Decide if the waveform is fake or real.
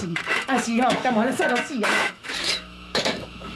fake